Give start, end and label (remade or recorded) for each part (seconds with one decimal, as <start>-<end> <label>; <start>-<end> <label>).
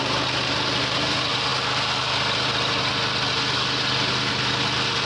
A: 0.0-5.0 recorded